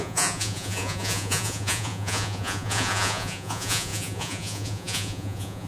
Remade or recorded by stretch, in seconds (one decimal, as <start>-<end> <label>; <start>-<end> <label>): 0.0-5.7 remade